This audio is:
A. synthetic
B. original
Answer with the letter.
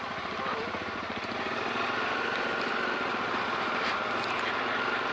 B